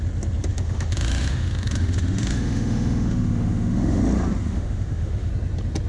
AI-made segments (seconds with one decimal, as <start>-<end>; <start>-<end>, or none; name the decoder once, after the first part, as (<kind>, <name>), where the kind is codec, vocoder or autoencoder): 0.5-4.0 (autoencoder, DAC-VAE); 4.4-5.3